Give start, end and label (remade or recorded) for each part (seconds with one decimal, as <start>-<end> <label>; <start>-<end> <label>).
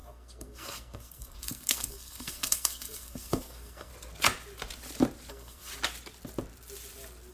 0.0-3.9 remade; 3.9-5.3 recorded; 5.3-5.7 remade; 5.7-7.3 recorded